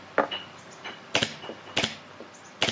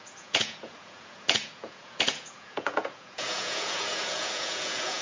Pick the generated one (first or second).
second